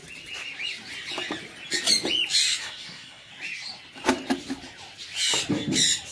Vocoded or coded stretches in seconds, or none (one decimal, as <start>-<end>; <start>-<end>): 2.6-3.3